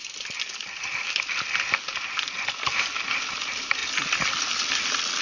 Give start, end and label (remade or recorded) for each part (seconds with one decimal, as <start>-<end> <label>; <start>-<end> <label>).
0.0-5.2 recorded